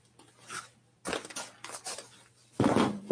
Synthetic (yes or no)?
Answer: no